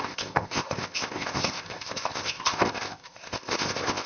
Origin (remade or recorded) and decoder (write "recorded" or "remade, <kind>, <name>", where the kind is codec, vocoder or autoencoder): remade, codec, ZipCodec